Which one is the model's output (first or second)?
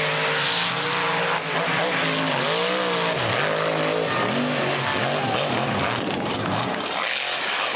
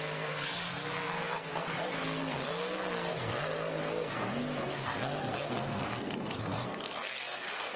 second